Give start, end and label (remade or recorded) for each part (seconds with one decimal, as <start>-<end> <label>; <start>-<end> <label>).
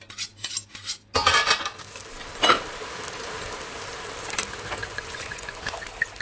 0.0-4.8 recorded; 4.8-5.8 remade; 5.8-6.2 recorded